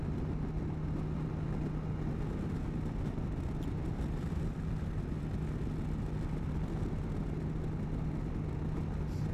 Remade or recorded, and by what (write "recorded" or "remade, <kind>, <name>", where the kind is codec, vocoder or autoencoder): recorded